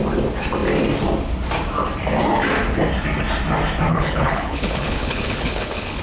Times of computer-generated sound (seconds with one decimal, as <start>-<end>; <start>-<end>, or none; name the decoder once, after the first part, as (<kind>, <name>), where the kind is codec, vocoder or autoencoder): 3.9-6.0 (codec, HILCodec)